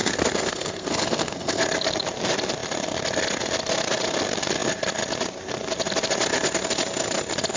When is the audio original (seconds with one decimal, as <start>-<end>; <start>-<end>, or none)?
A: 1.6-7.6